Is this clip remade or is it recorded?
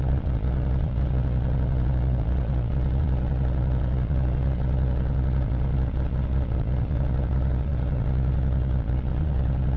remade